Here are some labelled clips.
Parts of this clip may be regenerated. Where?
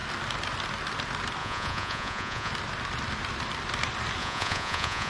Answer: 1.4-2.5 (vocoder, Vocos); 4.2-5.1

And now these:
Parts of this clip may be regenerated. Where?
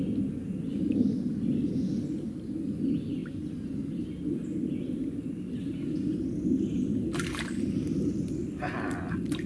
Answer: none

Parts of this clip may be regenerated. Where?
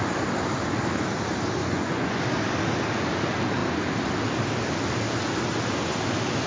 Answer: 1.6-2.2 (vocoder, Vocos)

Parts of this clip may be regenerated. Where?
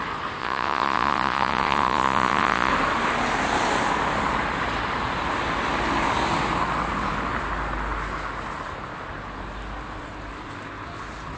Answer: 0.4-2.7 (vocoder, Vocos)